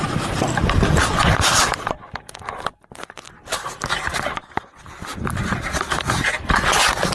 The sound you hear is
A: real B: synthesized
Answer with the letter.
B